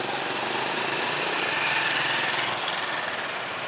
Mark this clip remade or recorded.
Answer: recorded